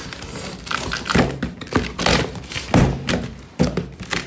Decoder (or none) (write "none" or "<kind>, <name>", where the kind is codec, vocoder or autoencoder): none